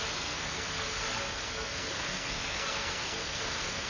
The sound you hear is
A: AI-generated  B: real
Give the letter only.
A